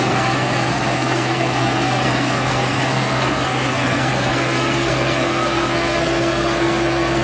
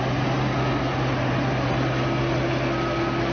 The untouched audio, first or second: second